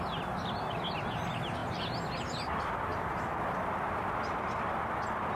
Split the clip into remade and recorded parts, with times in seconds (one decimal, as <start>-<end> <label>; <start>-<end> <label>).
0.0-5.4 recorded